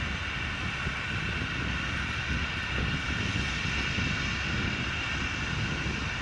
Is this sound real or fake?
real